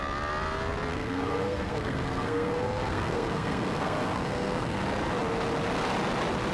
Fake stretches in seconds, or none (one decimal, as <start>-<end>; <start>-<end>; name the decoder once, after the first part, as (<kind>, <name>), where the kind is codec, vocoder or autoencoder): 0.9-4.8 (codec, SNAC)